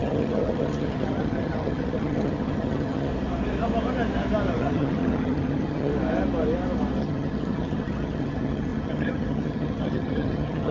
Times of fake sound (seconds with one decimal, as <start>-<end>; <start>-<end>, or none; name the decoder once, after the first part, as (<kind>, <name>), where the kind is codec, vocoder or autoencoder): 0.0-3.1 (vocoder, HiFi-GAN); 4.6-5.9; 7.0-10.7